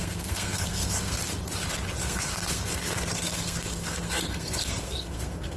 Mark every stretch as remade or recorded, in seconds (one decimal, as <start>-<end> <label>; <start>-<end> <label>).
0.0-1.2 remade; 1.2-2.0 recorded; 2.0-5.6 remade